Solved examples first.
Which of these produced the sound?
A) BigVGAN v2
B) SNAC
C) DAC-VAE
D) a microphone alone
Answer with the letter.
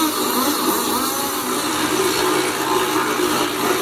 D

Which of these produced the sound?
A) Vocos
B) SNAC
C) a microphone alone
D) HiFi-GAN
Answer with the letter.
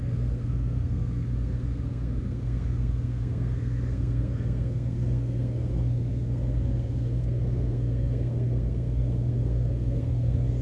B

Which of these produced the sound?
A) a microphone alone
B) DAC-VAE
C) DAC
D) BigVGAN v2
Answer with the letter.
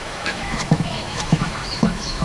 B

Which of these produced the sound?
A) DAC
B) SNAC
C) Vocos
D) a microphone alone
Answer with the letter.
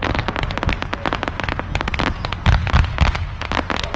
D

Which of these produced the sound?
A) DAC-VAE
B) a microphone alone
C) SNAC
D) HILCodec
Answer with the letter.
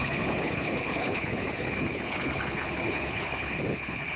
D